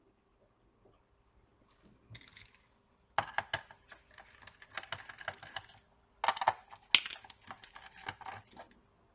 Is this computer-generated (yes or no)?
no